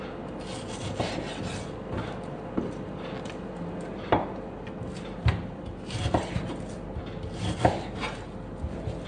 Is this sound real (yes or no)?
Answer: yes